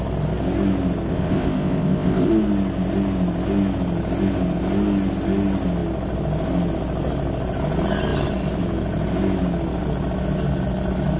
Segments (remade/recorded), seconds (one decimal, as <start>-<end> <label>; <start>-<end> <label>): 0.0-1.1 recorded; 1.1-2.3 remade; 2.3-11.2 recorded